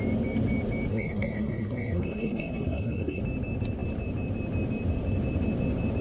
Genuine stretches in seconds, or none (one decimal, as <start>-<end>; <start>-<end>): 0.0-0.9; 3.2-6.0